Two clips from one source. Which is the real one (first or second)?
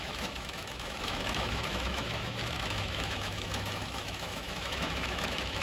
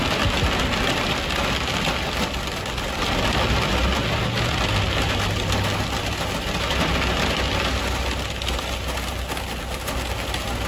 second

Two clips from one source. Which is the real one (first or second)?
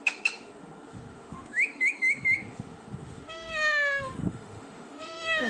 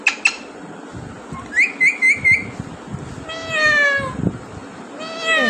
second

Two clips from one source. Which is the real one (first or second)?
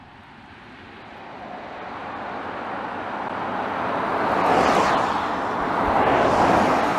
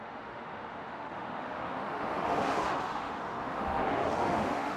first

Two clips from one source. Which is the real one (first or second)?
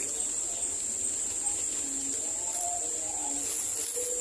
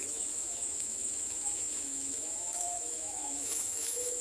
first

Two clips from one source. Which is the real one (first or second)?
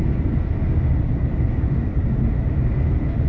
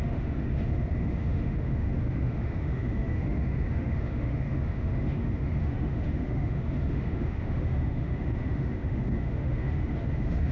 first